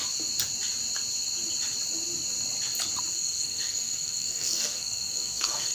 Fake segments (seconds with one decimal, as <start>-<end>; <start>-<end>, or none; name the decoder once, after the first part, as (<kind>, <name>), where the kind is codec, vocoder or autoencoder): 3.1-5.7 (codec, SNAC)